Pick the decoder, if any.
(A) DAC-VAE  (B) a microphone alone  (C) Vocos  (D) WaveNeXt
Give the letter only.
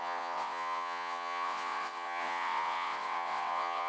D